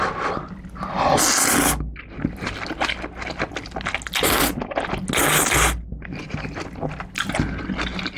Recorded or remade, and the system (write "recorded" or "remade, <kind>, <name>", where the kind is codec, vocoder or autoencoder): recorded